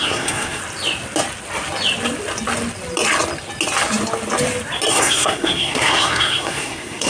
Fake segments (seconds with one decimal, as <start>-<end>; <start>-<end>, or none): 0.0-0.6; 4.9-7.1